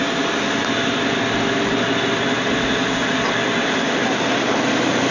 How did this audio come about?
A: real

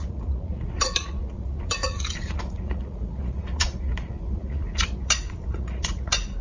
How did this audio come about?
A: fake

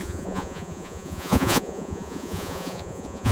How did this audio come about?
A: fake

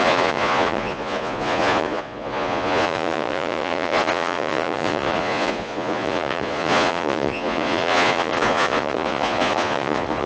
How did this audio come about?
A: fake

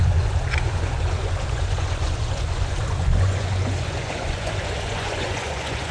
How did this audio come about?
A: fake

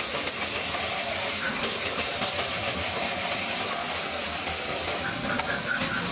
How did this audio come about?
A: real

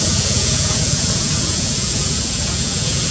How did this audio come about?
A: fake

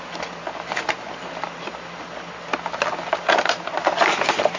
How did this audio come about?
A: real